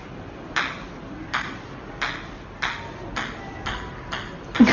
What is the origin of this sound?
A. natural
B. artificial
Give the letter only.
A